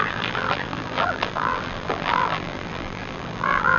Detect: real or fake fake